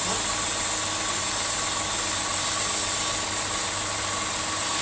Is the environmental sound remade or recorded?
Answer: recorded